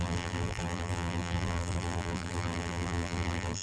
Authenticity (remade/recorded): remade